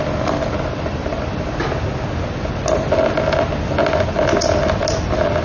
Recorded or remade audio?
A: recorded